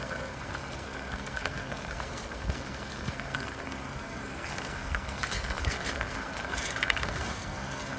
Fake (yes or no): yes